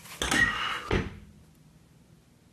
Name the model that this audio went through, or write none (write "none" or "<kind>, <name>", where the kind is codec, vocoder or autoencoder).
none